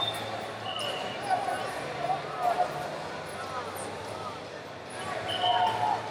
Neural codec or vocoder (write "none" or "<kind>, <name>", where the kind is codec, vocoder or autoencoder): none